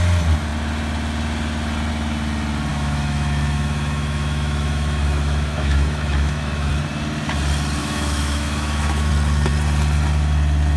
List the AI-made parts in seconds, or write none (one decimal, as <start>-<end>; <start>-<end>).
2.7-6.7; 7.8-9.1